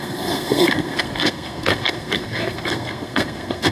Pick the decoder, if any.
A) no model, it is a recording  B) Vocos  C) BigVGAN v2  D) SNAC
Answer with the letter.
D